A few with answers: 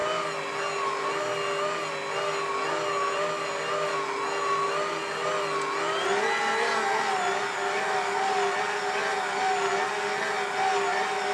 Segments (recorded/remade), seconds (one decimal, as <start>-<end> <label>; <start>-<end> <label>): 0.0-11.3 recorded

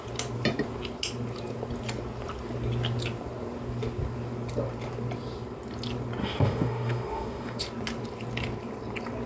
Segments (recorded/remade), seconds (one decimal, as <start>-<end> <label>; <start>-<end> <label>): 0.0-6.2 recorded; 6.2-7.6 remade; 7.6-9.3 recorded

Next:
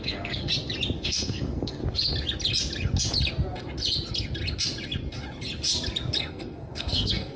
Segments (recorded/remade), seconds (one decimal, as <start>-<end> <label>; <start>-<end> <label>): 0.0-0.5 remade; 0.5-1.0 recorded; 1.0-1.8 remade; 1.8-6.2 recorded; 6.2-7.4 remade

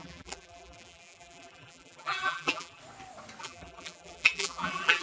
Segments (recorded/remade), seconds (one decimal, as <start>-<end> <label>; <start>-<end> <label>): 0.0-2.8 remade; 2.8-3.4 recorded; 3.4-5.0 remade

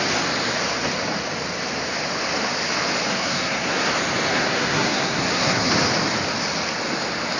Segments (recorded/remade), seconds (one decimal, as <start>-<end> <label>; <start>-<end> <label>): 0.0-3.1 recorded; 3.1-3.9 remade; 3.9-4.3 recorded; 4.3-5.7 remade; 5.7-7.4 recorded

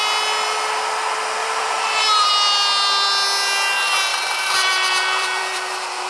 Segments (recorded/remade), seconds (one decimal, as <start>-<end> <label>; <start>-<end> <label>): 0.0-1.4 recorded; 1.4-2.3 remade; 2.3-4.1 recorded; 4.1-6.1 remade

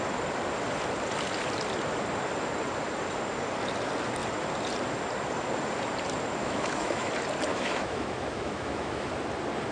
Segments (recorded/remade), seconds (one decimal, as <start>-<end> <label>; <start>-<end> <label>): 0.0-6.4 recorded; 6.4-7.1 remade; 7.1-7.5 recorded; 7.5-9.1 remade; 9.1-9.7 recorded

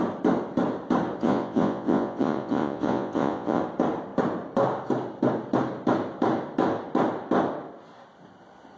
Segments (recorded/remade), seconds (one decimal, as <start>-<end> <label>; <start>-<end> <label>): 0.0-1.2 recorded; 1.2-3.6 remade; 3.6-8.8 recorded